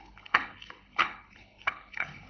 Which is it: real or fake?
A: fake